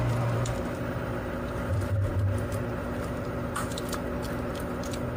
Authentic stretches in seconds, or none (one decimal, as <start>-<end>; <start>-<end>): 2.1-2.7; 3.7-4.5